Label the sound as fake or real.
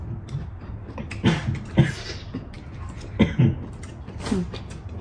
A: real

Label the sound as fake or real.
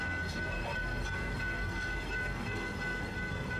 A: fake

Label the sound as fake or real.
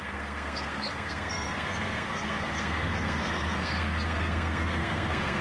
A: fake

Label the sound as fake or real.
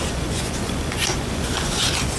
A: fake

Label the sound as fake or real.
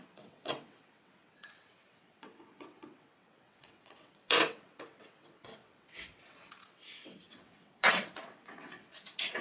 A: fake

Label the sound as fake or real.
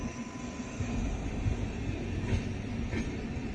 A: real